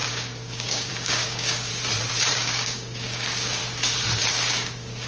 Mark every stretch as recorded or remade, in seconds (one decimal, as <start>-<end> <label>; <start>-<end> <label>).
0.0-1.7 remade; 1.7-2.3 recorded; 2.3-3.6 remade; 3.6-4.3 recorded; 4.3-5.1 remade